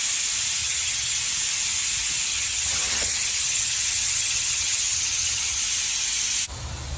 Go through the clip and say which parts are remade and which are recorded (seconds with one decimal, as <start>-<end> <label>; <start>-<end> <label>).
0.0-0.6 recorded; 0.6-1.2 remade; 1.2-2.3 recorded; 2.3-5.6 remade; 5.6-7.0 recorded